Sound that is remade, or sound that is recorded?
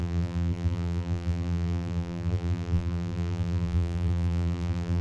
remade